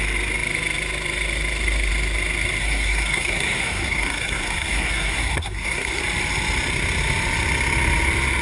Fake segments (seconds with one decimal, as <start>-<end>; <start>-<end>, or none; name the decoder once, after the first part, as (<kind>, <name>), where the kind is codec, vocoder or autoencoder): 2.6-6.0 (codec, SNAC)